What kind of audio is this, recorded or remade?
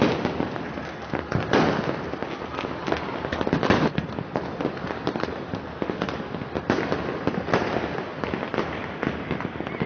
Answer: recorded